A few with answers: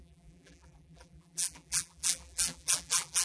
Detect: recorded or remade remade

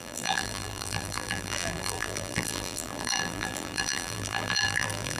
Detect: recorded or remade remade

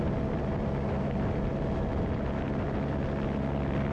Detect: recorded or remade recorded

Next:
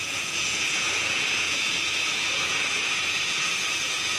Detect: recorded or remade remade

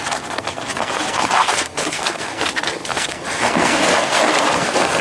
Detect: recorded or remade remade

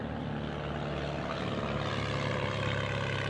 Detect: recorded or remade recorded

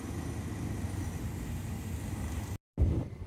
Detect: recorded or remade recorded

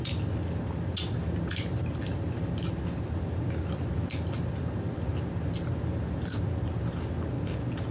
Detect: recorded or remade recorded